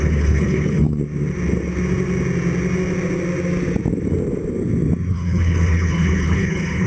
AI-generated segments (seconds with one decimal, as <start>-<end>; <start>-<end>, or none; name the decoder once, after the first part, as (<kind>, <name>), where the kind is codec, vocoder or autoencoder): 0.0-1.0 (codec, HILCodec); 5.1-6.9